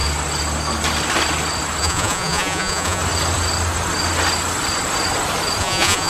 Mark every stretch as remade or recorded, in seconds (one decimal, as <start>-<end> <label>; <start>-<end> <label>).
0.0-1.8 recorded; 1.8-3.0 remade; 3.0-5.6 recorded; 5.6-6.1 remade